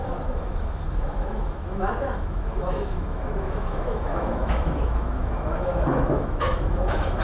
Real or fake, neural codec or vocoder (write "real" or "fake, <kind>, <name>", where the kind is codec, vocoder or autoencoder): fake, autoencoder, DAC-VAE